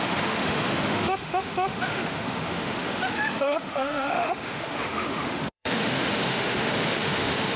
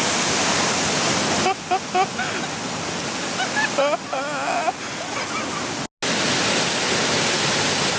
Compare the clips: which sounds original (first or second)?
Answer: second